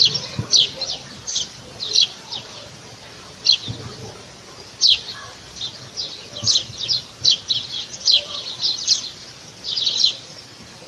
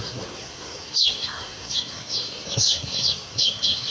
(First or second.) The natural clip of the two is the first